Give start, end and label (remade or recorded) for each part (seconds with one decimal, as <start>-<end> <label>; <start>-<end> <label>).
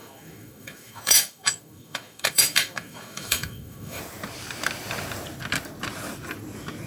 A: 0.0-4.0 remade; 4.0-6.9 recorded